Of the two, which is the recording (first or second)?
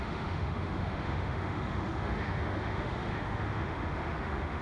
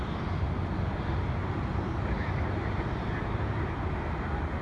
second